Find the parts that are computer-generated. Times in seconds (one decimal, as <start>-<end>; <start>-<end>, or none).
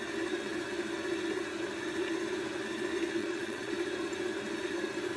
3.2-3.7